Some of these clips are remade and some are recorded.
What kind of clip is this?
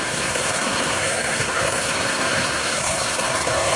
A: remade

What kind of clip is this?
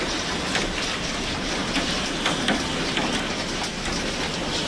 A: recorded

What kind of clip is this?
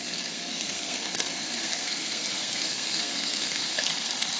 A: remade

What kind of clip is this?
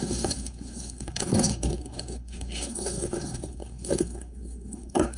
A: remade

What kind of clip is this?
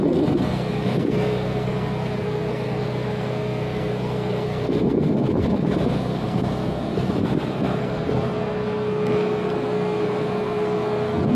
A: remade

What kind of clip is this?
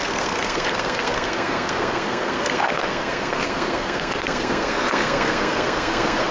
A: remade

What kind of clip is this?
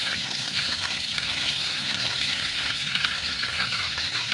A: remade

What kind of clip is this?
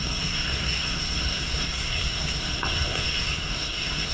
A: remade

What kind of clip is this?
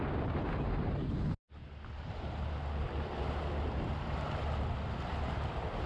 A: recorded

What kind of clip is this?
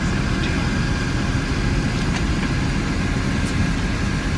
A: recorded